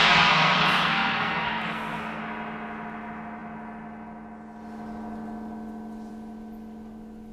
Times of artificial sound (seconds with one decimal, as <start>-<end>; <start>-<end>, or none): 0.0-2.2